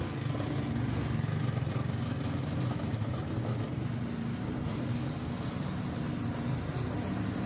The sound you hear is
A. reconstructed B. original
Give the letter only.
B